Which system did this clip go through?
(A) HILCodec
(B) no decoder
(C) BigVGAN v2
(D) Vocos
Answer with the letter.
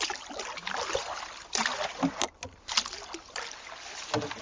B